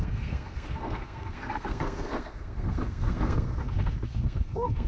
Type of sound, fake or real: fake